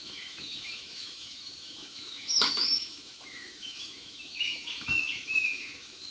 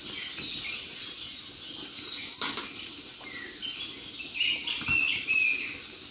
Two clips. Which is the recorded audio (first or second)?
second